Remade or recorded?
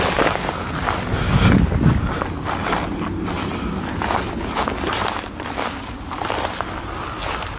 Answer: recorded